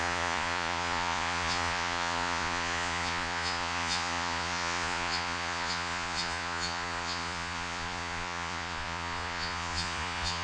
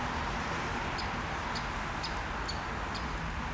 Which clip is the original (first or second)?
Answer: second